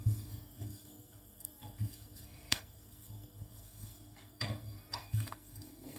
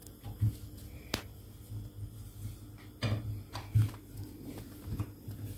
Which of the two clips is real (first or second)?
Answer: second